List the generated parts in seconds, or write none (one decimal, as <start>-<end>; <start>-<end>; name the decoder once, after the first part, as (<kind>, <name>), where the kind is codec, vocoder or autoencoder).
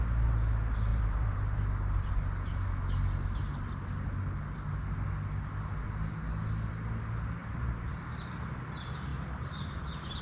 0.9-2.1 (vocoder, BigVGAN v2); 7.4-8.0